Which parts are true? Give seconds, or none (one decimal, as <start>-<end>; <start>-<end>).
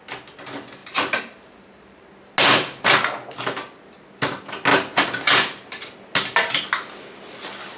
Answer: 0.0-0.8; 2.2-7.8